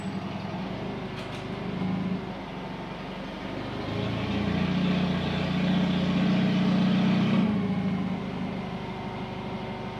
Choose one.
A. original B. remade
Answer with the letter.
A